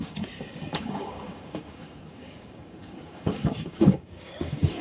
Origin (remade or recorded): remade